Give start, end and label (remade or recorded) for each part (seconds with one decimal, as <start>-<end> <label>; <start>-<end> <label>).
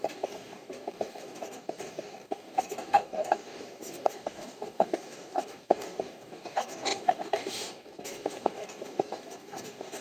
0.0-10.0 remade